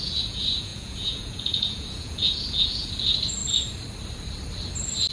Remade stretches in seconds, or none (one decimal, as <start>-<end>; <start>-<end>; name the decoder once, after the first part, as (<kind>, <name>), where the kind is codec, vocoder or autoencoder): 0.0-3.4 (vocoder, Vocos)